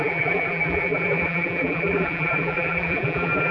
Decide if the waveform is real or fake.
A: fake